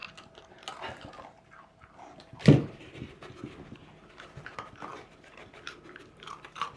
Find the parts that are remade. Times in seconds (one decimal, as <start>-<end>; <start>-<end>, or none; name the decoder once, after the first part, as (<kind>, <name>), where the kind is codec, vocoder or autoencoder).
none